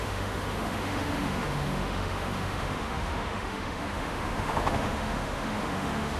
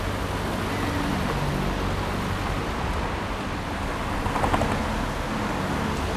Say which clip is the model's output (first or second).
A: first